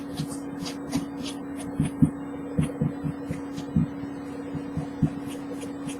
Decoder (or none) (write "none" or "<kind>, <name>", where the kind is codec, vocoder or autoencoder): none